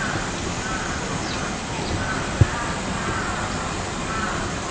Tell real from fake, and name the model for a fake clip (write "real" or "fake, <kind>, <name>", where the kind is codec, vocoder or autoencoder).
real